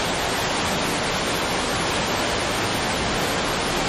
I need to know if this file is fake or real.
real